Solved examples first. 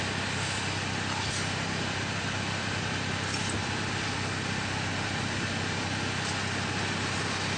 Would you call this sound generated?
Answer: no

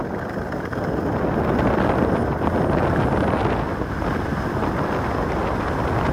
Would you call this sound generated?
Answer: no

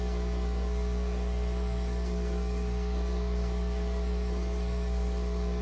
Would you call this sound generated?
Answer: yes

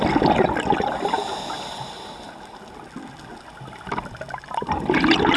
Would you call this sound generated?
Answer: no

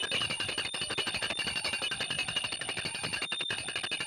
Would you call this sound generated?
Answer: no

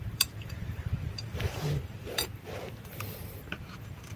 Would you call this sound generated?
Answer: yes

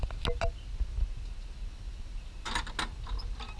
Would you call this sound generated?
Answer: no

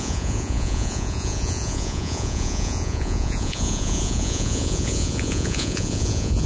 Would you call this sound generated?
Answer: yes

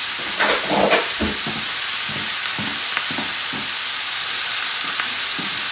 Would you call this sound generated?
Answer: no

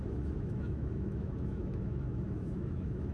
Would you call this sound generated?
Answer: yes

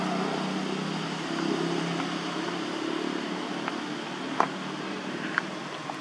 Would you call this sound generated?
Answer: no